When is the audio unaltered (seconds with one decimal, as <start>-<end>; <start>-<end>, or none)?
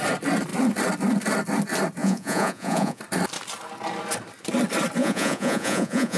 0.0-2.0; 3.0-5.0